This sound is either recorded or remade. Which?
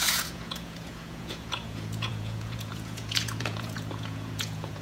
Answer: remade